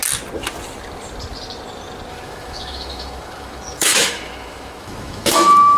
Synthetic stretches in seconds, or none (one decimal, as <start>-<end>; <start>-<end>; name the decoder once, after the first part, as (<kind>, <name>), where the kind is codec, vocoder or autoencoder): 2.1-5.8 (autoencoder, DAC-VAE)